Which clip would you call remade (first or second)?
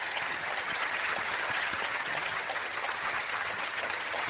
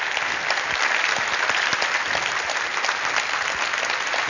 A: first